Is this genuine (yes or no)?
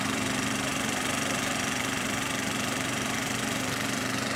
no